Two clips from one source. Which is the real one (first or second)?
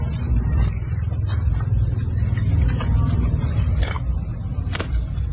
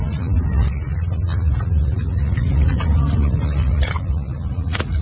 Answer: first